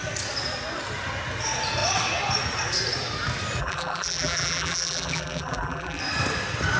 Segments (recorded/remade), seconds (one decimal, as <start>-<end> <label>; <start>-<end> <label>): 0.0-3.6 recorded; 3.6-6.0 remade; 6.0-6.8 recorded